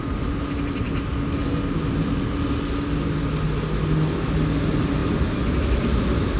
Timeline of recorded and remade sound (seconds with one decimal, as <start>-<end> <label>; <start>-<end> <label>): 0.0-6.4 recorded